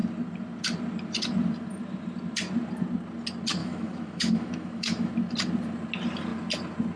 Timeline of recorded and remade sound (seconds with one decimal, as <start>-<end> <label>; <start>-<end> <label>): 0.0-3.6 recorded; 3.6-5.1 remade; 5.1-7.0 recorded